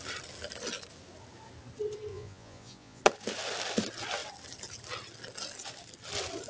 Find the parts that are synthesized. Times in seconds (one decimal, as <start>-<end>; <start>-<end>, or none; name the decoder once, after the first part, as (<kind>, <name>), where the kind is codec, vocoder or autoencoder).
2.1-3.0 (vocoder, Vocos)